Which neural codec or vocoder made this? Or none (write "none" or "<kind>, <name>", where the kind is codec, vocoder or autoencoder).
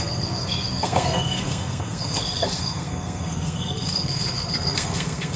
codec, SNAC